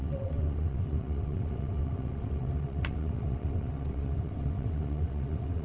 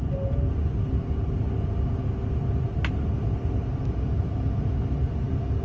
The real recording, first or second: second